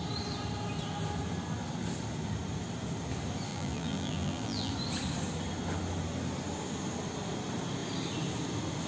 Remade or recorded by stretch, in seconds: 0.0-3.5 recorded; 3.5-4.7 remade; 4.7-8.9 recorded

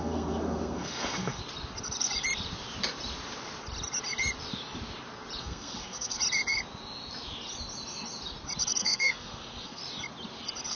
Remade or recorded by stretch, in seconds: 0.0-1.4 remade; 1.4-5.4 recorded; 5.4-6.2 remade; 6.2-8.8 recorded; 8.8-9.8 remade; 9.8-10.7 recorded

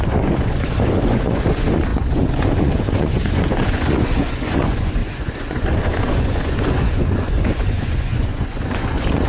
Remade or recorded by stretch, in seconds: 0.0-9.3 remade

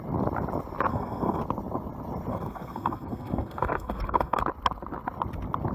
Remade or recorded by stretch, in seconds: 0.0-0.9 recorded; 0.9-1.4 remade; 1.4-2.3 recorded; 2.3-4.4 remade; 4.4-5.7 recorded